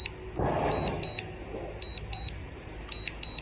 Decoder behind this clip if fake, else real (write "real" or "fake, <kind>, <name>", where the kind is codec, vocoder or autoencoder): real